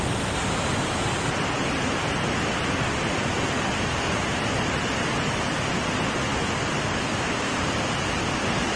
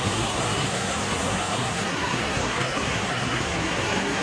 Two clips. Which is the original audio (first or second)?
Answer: first